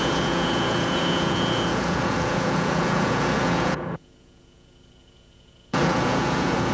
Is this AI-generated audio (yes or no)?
yes